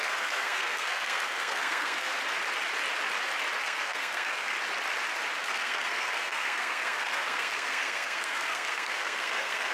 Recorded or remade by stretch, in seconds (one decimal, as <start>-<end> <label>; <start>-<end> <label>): 0.0-2.1 remade; 2.1-3.6 recorded; 3.6-4.5 remade; 4.5-5.4 recorded; 5.4-9.7 remade